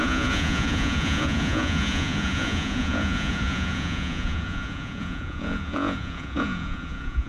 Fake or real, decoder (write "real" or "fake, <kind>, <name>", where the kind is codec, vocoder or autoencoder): fake, vocoder, Vocos